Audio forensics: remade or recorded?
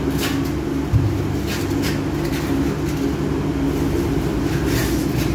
recorded